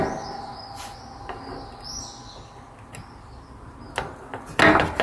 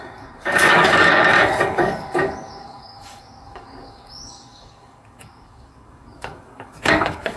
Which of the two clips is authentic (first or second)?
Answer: first